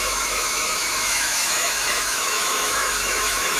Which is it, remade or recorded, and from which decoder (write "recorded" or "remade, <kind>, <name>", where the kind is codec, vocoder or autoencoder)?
remade, autoencoder, DAC-VAE